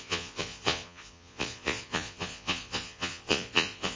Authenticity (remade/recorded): remade